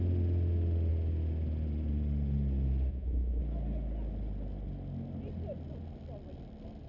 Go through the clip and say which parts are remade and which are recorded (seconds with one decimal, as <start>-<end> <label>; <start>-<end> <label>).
0.0-2.9 recorded; 2.9-3.4 remade; 3.4-6.9 recorded